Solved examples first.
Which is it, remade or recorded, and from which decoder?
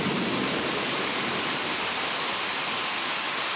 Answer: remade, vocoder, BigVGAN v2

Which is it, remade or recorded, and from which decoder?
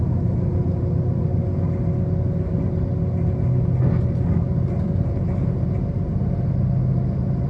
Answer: recorded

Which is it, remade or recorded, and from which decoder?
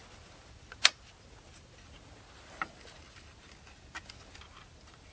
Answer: recorded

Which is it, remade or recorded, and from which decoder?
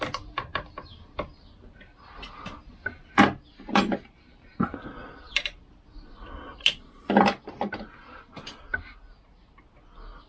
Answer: recorded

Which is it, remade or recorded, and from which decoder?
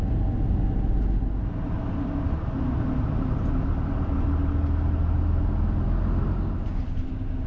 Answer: recorded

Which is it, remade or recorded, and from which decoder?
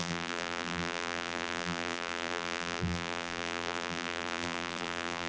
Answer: remade, vocoder, BigVGAN v2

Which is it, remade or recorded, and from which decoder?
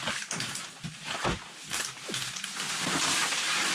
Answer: remade, vocoder, BigVGAN v2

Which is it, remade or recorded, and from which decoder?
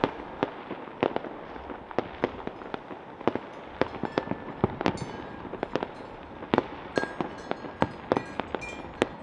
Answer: recorded